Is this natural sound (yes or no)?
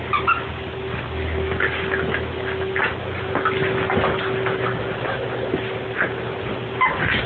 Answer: yes